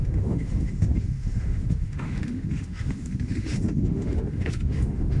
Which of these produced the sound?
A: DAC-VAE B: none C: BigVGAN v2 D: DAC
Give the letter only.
A